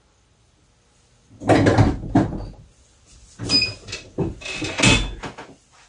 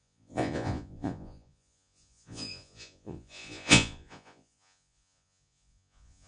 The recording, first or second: first